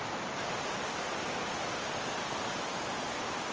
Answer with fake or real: fake